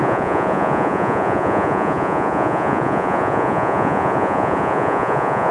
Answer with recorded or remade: remade